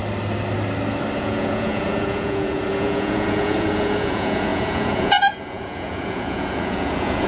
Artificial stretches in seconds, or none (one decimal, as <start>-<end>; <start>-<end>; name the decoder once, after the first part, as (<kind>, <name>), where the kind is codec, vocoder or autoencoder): 1.2-7.3 (vocoder, Vocos)